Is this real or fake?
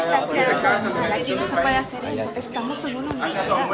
real